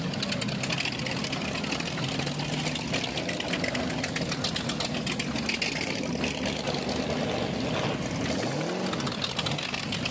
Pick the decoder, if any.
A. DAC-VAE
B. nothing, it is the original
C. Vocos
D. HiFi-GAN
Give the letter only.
B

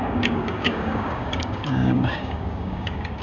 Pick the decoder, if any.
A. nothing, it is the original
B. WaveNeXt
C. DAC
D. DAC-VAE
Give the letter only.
C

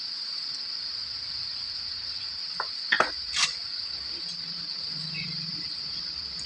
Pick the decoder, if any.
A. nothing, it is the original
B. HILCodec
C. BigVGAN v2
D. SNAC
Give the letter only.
A